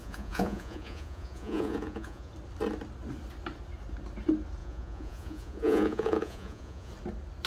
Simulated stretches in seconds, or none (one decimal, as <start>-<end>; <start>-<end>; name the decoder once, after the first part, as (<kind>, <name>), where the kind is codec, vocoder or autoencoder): 0.0-2.3 (vocoder, Vocos); 4.6-6.9

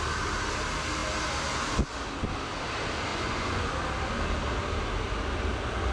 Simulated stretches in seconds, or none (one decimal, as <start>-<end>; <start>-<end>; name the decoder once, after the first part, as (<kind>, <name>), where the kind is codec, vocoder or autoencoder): 3.1-3.7 (vocoder, Vocos)

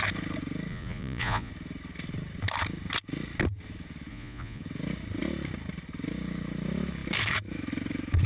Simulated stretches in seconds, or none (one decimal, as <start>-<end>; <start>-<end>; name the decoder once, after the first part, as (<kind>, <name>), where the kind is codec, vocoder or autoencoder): 0.7-1.5 (vocoder, Vocos); 4.1-4.6

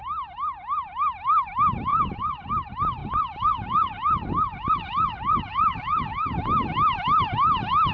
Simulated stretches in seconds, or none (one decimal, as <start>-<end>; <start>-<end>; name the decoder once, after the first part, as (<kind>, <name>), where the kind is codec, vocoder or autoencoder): 1.9-2.5 (vocoder, Vocos); 3.0-6.1